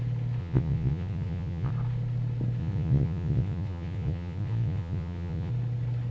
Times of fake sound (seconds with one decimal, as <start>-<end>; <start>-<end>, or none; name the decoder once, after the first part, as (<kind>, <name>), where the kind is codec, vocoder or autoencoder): 0.4-1.7 (vocoder, Vocos); 2.6-5.5